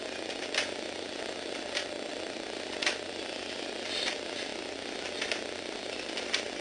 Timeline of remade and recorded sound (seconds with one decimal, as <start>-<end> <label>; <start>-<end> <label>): 0.0-2.1 recorded; 2.1-2.8 remade; 2.8-4.5 recorded; 4.5-5.8 remade; 5.8-6.6 recorded